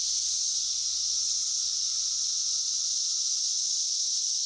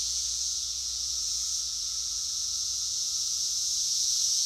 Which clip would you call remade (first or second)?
second